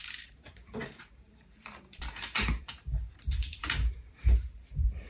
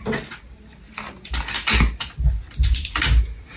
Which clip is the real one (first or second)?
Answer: second